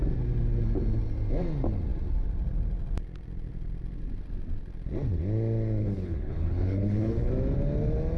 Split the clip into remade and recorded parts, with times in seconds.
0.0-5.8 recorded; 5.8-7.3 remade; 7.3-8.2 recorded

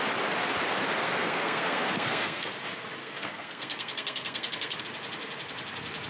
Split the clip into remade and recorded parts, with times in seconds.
0.0-1.0 recorded; 1.0-2.5 remade; 2.5-3.0 recorded; 3.0-4.8 remade; 4.8-6.1 recorded

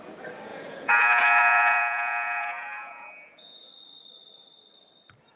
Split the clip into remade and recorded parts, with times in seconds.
0.0-0.5 recorded; 0.5-3.7 remade; 3.7-5.4 recorded

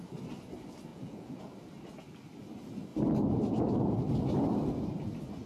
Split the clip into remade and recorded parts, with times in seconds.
0.0-0.9 recorded; 0.9-1.4 remade; 1.4-5.5 recorded

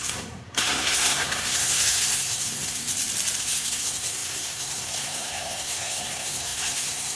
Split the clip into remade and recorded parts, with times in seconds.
0.0-2.9 remade; 2.9-3.4 recorded; 3.4-7.2 remade

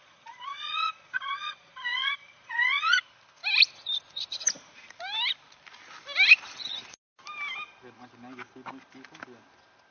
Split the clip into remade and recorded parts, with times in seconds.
0.0-3.0 remade; 3.0-9.9 recorded